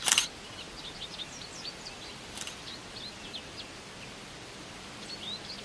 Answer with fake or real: real